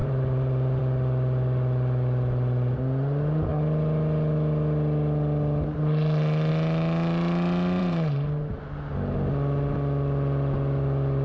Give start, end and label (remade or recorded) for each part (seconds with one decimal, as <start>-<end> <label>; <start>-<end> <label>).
0.0-0.8 remade; 0.8-7.8 recorded; 7.8-8.6 remade; 8.6-11.2 recorded